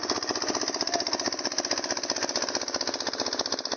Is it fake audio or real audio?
real